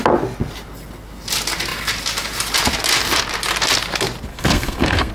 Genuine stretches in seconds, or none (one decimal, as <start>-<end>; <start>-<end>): 0.0-4.3